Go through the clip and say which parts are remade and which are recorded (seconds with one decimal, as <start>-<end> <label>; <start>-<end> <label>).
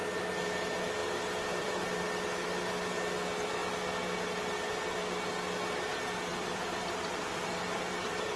0.0-1.0 recorded; 1.0-2.0 remade; 2.0-6.3 recorded; 6.3-8.4 remade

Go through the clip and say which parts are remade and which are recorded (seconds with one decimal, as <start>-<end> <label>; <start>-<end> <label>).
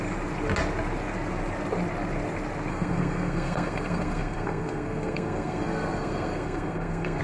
0.0-2.7 recorded; 2.7-7.2 remade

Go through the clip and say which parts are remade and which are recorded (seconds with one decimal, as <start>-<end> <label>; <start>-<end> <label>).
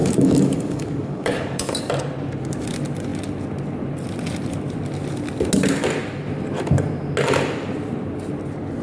0.0-1.9 remade; 1.9-8.8 recorded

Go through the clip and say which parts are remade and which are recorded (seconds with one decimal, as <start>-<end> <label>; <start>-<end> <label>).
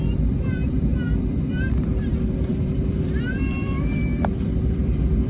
0.0-5.3 remade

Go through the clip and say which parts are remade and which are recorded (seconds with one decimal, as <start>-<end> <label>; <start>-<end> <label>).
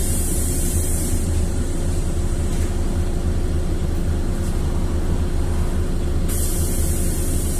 0.0-2.2 remade; 2.2-7.6 recorded